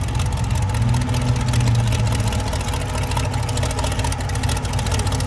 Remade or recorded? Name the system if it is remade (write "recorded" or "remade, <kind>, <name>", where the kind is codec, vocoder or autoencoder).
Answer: recorded